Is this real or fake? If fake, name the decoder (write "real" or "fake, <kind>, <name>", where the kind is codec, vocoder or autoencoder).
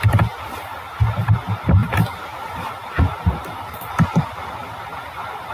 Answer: real